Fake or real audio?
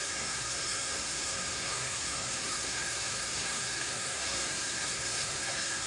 fake